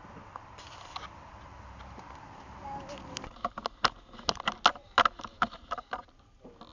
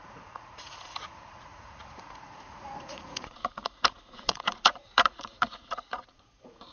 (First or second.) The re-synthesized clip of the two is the second